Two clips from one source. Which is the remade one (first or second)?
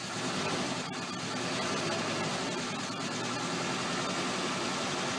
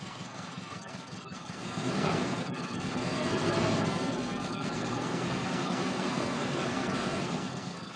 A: second